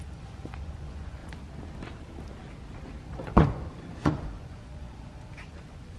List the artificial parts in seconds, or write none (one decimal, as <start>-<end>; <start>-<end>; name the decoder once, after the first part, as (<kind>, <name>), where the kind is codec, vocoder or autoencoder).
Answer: 0.0-1.2 (vocoder, Vocos); 3.0-6.0